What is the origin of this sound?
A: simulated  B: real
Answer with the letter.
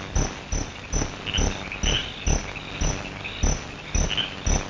B